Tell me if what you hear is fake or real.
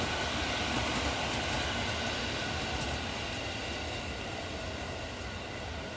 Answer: real